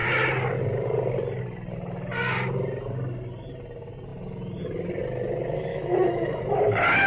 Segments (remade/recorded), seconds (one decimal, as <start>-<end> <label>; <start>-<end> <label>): 0.0-5.7 recorded; 5.7-6.4 remade; 6.4-7.1 recorded